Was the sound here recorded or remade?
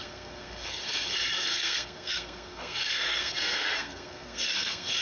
remade